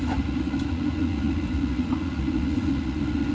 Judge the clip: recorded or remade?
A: remade